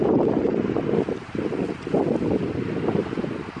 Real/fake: real